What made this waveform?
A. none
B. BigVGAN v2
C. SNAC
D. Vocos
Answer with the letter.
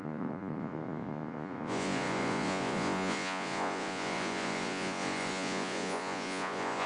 D